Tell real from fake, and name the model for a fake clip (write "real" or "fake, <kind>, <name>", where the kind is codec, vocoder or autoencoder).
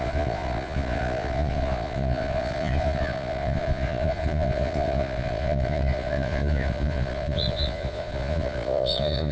fake, vocoder, Vocos